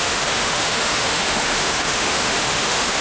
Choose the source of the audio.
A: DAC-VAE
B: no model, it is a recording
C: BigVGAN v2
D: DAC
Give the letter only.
A